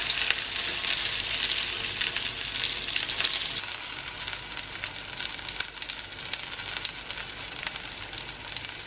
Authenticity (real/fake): real